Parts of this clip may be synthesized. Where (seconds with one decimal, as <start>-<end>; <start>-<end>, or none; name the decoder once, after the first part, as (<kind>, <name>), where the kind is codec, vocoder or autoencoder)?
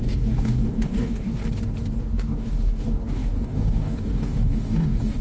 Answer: 0.0-1.4 (codec, DAC); 2.0-5.2